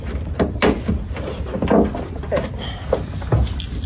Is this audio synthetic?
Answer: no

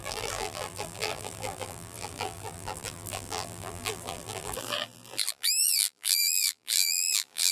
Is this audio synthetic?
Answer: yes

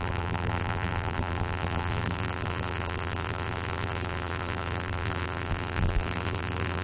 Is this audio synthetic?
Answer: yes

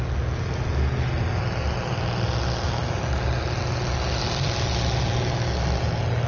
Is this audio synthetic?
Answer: no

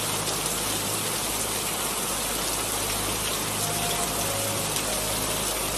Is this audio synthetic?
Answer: yes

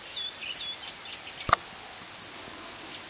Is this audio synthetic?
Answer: no